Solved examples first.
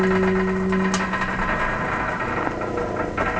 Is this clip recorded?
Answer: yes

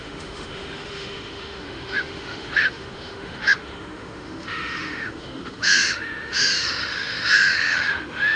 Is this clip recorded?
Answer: no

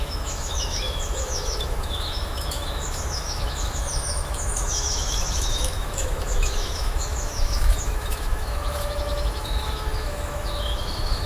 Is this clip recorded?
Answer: no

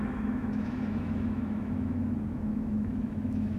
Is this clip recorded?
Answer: no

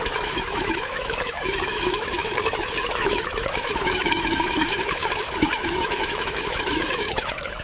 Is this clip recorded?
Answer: no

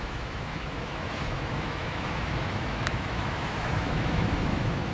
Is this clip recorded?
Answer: no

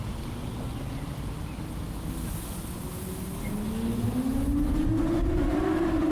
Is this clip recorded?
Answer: yes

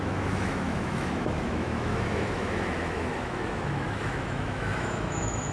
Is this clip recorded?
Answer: no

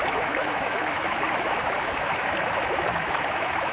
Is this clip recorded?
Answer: no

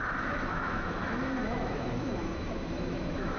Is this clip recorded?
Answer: no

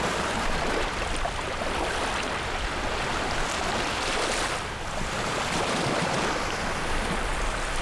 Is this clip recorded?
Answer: yes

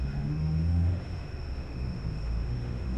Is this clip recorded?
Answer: no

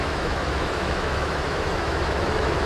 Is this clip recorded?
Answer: no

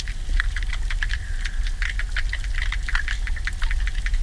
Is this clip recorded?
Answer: yes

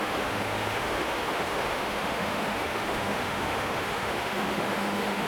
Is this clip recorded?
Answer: no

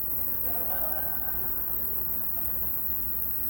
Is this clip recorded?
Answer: no